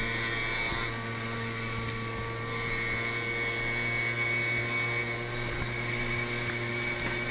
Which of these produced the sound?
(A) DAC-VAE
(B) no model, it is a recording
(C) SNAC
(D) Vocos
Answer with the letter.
B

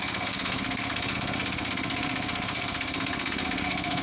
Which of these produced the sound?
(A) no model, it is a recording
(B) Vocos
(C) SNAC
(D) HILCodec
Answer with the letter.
C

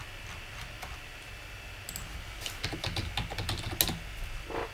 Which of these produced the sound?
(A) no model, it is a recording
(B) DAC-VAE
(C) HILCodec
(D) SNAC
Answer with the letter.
A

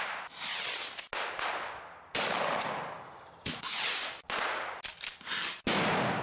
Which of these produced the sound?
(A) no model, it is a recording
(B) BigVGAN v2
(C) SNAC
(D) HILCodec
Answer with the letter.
A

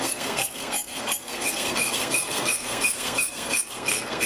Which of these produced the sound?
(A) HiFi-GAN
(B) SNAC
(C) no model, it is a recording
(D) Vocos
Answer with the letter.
B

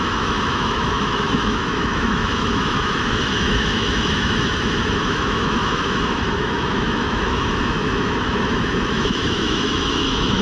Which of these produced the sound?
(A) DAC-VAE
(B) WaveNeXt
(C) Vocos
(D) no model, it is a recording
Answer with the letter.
A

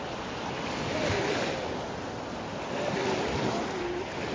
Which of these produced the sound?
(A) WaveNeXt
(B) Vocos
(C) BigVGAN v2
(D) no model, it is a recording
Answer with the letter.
D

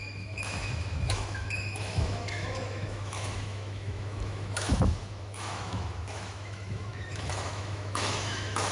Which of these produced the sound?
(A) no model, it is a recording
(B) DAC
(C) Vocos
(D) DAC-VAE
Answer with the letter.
D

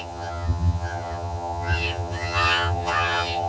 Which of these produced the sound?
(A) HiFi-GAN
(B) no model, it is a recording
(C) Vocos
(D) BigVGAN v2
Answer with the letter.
A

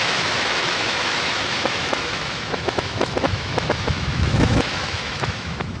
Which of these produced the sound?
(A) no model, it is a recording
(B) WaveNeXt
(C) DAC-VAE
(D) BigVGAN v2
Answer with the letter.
C